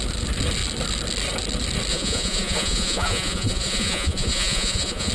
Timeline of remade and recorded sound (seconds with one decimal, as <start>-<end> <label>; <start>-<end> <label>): 0.0-1.9 recorded; 1.9-5.1 remade